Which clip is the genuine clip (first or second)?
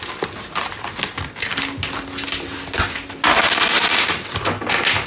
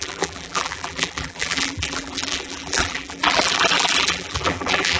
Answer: first